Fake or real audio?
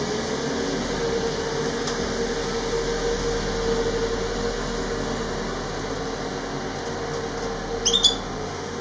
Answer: real